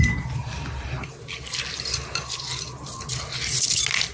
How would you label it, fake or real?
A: real